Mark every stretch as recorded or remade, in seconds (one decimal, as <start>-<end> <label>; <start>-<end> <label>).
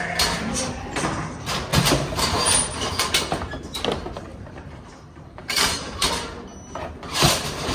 0.0-1.7 recorded; 1.7-3.1 remade; 3.1-4.3 recorded; 4.3-6.1 remade; 6.1-6.5 recorded; 6.5-7.7 remade